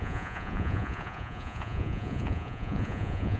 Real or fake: fake